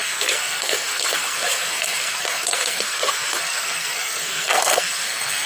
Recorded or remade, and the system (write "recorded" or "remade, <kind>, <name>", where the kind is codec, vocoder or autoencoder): remade, codec, SNAC